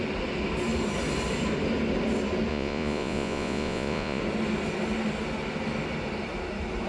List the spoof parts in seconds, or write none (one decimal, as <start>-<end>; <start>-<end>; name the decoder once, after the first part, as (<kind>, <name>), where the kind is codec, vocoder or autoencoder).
2.5-4.2 (vocoder, Vocos)